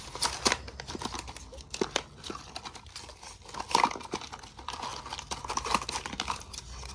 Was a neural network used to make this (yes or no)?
no